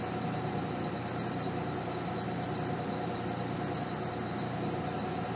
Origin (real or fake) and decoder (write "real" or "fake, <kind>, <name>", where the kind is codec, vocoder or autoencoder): real